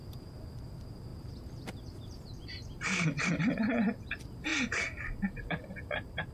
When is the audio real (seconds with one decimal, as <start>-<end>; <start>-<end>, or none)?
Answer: none